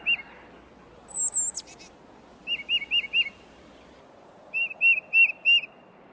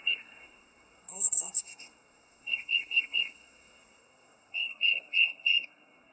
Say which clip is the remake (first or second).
second